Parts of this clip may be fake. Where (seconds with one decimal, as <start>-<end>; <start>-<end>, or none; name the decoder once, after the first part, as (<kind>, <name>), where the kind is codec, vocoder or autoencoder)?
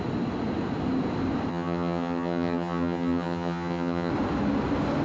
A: 1.5-4.1 (vocoder, HiFi-GAN)